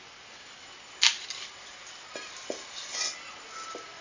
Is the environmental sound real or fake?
real